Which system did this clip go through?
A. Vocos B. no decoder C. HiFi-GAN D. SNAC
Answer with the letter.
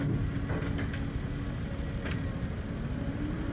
B